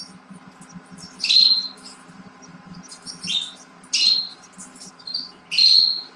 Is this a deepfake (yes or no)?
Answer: no